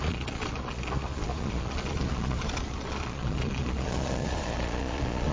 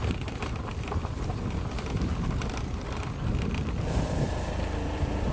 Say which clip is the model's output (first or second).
first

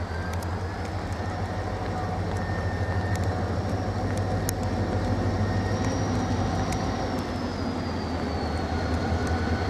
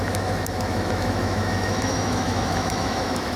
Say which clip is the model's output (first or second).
second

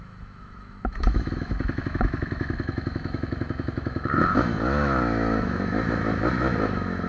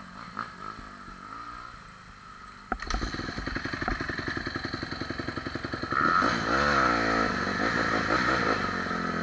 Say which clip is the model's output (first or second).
first